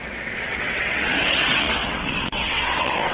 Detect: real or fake fake